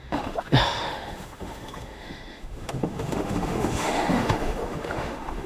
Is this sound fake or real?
fake